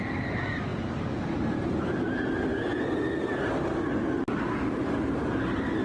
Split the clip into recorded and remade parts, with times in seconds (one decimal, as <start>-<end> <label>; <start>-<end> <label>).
0.0-5.8 recorded